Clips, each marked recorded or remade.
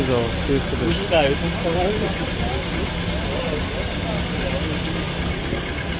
recorded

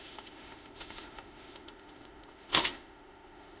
remade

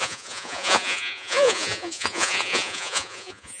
remade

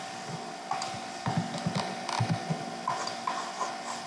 recorded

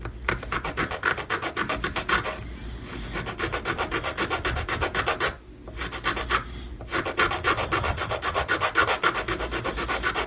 recorded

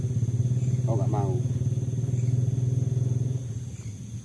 recorded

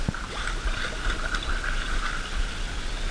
recorded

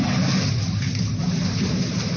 recorded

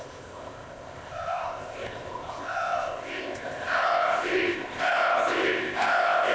remade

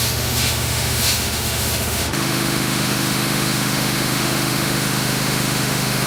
remade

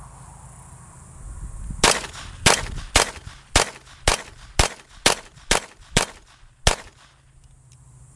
recorded